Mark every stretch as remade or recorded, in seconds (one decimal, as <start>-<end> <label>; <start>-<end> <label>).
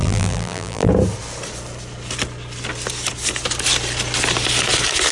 0.0-0.9 remade; 0.9-5.1 recorded